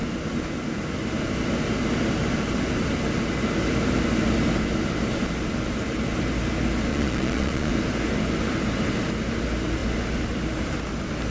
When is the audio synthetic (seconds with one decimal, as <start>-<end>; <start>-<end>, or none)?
6.9-7.7